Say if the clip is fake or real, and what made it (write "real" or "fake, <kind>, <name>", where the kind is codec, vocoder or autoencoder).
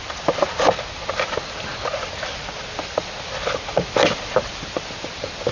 real